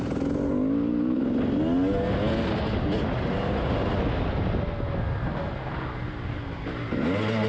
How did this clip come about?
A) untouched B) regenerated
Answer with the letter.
A